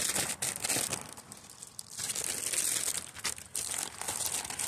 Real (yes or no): yes